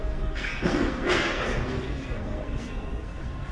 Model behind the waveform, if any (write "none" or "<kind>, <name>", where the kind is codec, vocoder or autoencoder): codec, SNAC